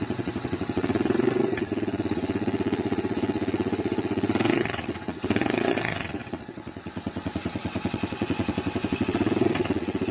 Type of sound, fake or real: fake